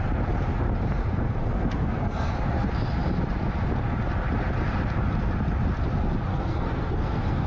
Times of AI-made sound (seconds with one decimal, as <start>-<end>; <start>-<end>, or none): 1.0-2.3; 6.3-7.5